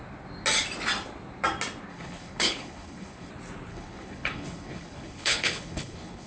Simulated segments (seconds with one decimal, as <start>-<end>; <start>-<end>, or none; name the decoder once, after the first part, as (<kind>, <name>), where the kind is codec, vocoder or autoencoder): 1.9-3.3 (codec, HILCodec); 3.7-6.3